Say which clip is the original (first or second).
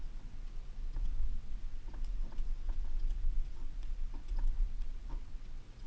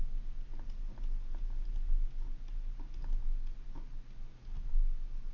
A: second